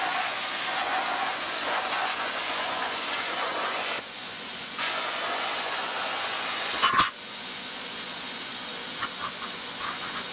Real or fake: fake